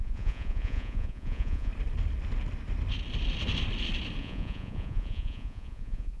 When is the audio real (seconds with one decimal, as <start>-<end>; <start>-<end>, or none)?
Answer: 1.7-4.2